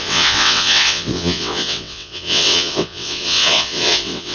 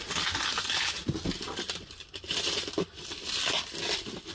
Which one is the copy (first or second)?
first